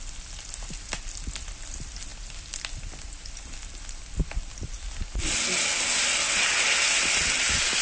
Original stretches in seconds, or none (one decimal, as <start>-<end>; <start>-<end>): 0.0-7.8